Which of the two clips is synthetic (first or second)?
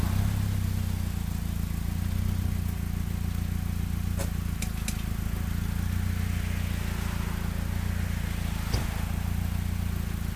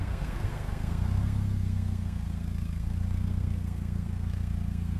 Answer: second